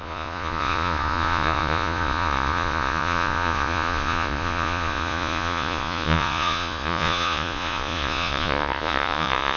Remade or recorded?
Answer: remade